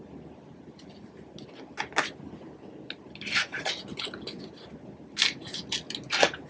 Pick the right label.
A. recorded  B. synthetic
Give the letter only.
A